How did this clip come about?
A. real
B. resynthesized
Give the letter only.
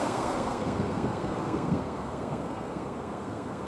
B